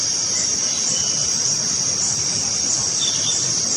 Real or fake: real